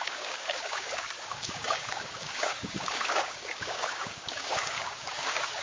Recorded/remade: remade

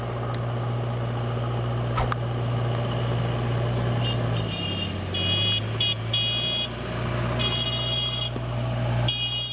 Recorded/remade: recorded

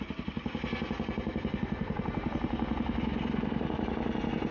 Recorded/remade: recorded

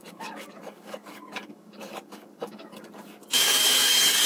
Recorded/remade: remade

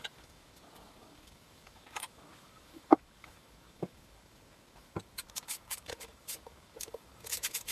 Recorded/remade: remade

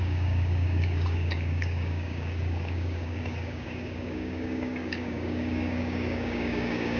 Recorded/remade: remade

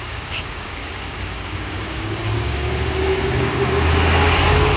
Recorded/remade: remade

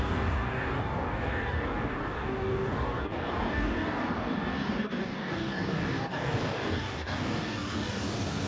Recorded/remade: remade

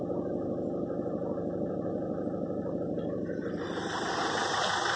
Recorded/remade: recorded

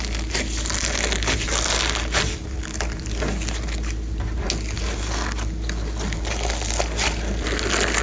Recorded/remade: recorded